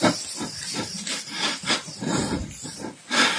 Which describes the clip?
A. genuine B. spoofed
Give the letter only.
A